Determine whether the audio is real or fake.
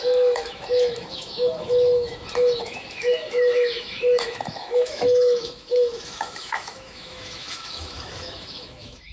fake